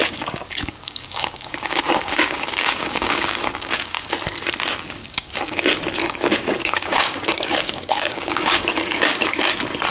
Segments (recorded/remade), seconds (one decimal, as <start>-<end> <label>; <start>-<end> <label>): 0.0-4.1 remade; 4.1-5.0 recorded; 5.0-5.6 remade; 5.6-6.0 recorded; 6.0-9.4 remade; 9.4-9.9 recorded